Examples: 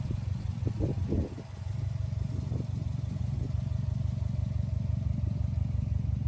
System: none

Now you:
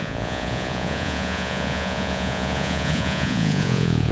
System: vocoder, Vocos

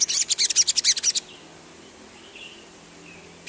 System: none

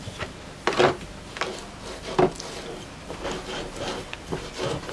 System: none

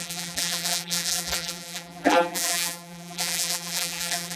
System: vocoder, BigVGAN v2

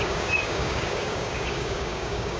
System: codec, DAC